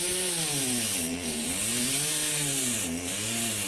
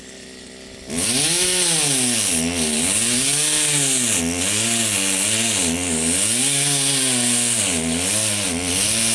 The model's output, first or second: first